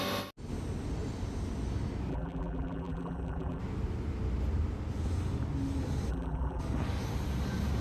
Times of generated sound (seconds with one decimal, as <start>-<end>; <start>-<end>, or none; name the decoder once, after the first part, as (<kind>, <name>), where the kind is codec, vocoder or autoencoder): 2.1-3.6 (vocoder, BigVGAN v2); 6.1-6.6